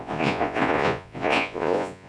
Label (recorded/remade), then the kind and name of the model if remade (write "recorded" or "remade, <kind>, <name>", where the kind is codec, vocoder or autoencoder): remade, vocoder, Vocos